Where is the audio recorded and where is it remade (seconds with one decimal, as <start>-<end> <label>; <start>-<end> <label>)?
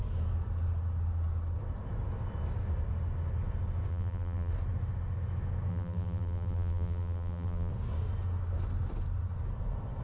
0.0-3.9 recorded; 3.9-4.5 remade; 4.5-5.7 recorded; 5.7-7.7 remade; 7.7-10.0 recorded